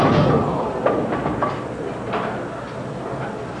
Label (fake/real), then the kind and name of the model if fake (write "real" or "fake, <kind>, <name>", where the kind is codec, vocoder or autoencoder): real